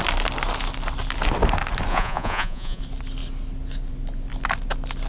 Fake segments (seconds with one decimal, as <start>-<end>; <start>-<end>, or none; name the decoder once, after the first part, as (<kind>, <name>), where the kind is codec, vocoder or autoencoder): 1.9-2.8 (vocoder, Vocos)